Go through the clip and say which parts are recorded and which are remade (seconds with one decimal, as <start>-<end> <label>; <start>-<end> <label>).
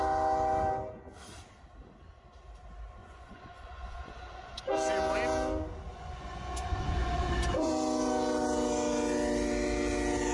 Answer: 0.0-3.0 recorded; 3.0-4.6 remade; 4.6-5.9 recorded; 5.9-7.7 remade; 7.7-10.3 recorded